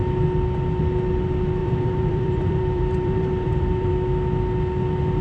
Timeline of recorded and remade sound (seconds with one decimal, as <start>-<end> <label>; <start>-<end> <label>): 0.0-1.6 recorded; 1.6-3.9 remade; 3.9-5.2 recorded